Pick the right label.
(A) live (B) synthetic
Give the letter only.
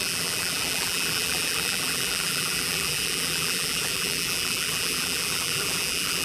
B